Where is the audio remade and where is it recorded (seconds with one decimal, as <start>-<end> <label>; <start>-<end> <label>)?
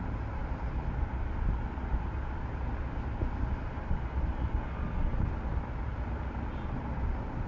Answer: 0.0-7.5 recorded